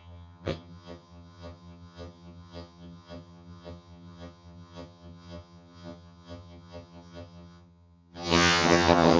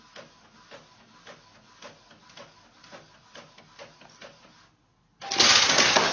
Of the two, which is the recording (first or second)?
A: second